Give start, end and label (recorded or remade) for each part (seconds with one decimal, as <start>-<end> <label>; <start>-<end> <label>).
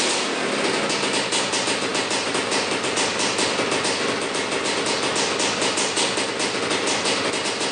0.0-7.7 recorded